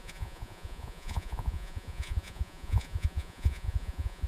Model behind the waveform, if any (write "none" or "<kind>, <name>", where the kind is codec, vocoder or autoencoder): vocoder, Vocos